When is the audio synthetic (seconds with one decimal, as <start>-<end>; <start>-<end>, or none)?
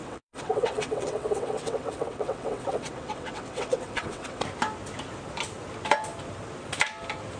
0.0-4.4